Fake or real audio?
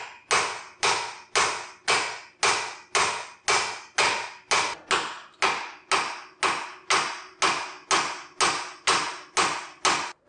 real